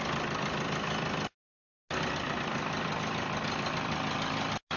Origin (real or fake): real